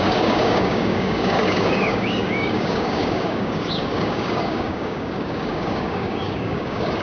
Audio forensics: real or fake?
fake